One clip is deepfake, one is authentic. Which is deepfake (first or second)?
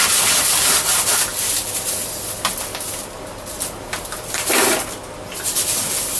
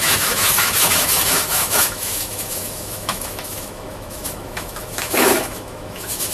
second